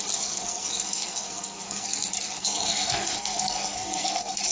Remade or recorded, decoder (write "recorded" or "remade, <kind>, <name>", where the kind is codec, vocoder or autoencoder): remade, codec, SNAC